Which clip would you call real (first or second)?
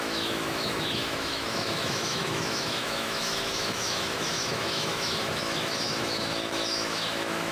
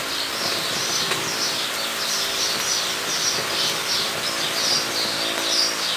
second